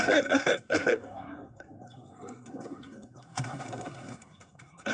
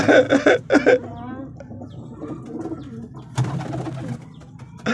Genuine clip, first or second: second